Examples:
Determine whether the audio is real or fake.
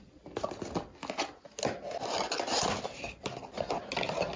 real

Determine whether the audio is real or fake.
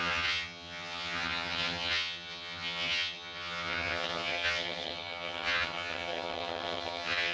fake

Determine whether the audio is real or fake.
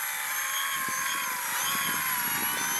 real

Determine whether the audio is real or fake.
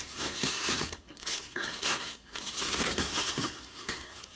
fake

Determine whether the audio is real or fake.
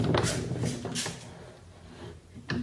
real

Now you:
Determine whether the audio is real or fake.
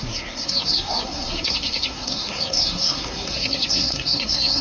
fake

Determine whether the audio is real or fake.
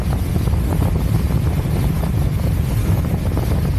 real